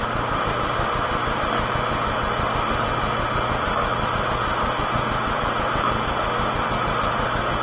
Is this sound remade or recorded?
recorded